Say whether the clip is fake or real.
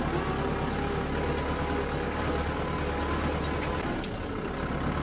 real